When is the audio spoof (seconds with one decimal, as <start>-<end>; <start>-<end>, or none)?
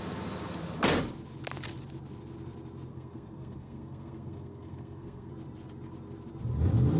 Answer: 2.9-5.3